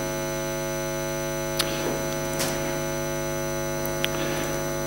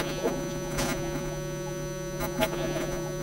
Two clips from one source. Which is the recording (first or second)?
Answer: first